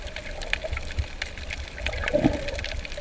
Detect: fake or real real